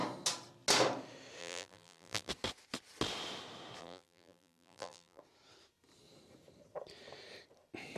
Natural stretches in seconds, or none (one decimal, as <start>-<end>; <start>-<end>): 0.0-1.4; 2.3-3.8; 5.2-8.0